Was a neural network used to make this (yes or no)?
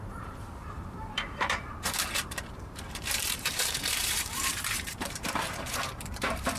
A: yes